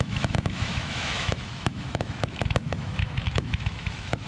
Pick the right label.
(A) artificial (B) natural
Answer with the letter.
A